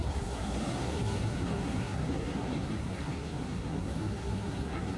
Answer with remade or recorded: remade